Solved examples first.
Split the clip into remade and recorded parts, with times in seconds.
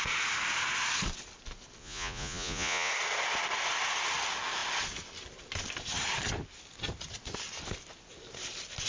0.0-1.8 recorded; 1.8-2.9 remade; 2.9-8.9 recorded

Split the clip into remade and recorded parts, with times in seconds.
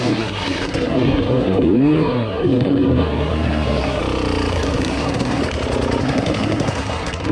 0.0-4.0 remade; 4.0-4.5 recorded; 4.5-5.4 remade; 5.4-6.0 recorded; 6.0-7.3 remade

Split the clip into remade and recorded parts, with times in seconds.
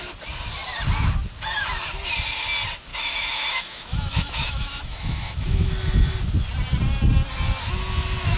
0.0-2.9 recorded; 2.9-5.7 remade; 5.7-8.4 recorded